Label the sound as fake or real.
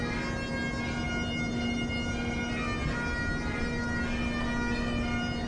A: real